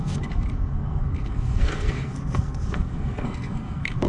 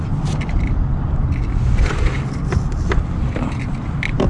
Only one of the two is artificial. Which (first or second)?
first